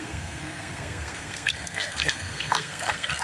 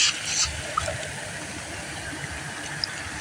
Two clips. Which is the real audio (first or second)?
second